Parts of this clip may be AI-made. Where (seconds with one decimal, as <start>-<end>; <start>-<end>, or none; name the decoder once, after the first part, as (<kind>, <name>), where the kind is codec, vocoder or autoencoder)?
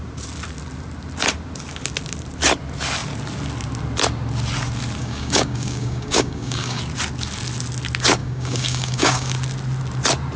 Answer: 5.0-6.8 (codec, DAC); 8.2-9.3